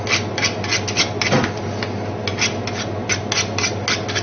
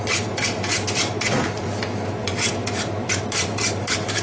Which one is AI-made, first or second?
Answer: second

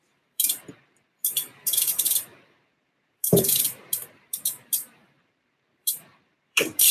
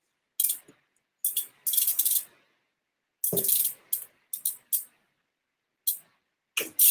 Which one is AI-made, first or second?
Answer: first